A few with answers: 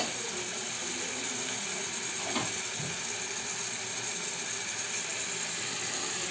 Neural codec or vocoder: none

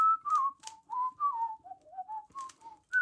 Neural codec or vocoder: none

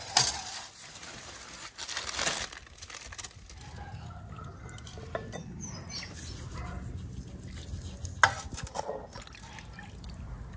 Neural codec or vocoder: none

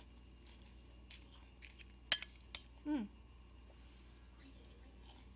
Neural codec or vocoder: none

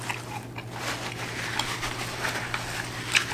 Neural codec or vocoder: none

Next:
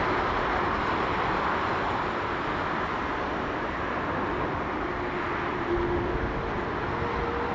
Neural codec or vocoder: none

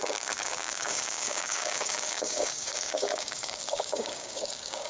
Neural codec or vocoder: codec, DAC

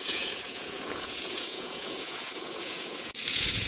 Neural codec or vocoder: vocoder, Vocos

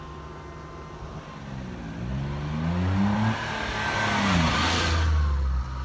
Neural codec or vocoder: none